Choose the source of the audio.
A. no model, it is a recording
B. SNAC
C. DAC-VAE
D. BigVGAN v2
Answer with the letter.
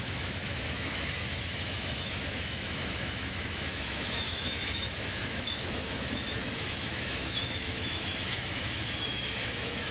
C